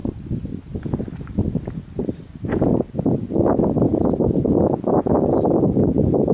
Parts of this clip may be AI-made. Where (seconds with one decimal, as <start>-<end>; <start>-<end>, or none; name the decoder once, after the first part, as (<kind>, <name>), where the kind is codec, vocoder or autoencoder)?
none